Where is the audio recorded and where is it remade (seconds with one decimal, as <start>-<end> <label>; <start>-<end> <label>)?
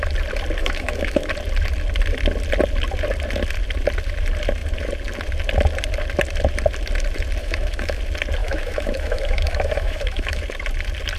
0.0-0.6 recorded; 0.6-1.3 remade; 1.3-7.4 recorded; 7.4-8.0 remade; 8.0-8.4 recorded; 8.4-10.4 remade; 10.4-11.2 recorded